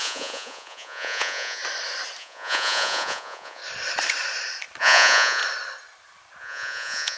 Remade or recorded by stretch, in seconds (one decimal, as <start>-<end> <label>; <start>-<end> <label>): 0.0-1.6 remade; 1.6-2.2 recorded; 2.2-3.6 remade; 3.6-4.8 recorded; 4.8-5.4 remade; 5.4-6.4 recorded; 6.4-7.2 remade